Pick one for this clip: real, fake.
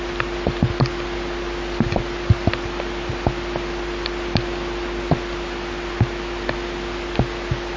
real